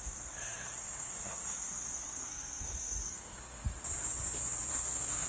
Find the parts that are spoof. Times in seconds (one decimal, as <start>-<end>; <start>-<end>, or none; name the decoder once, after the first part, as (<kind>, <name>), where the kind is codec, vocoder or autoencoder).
0.0-3.6 (codec, SNAC); 4.7-5.3